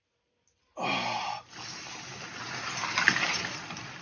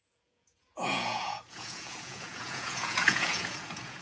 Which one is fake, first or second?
second